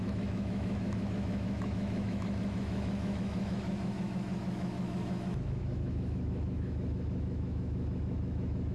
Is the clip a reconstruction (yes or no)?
yes